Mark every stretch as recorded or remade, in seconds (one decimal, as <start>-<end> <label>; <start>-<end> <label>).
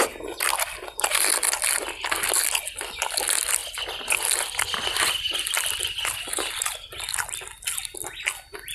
0.0-8.7 recorded